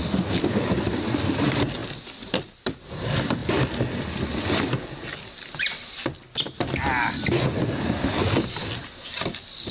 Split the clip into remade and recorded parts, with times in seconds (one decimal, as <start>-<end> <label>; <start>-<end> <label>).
0.0-9.7 recorded